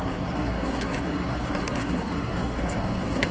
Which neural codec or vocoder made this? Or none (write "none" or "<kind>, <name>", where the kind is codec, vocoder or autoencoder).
codec, SNAC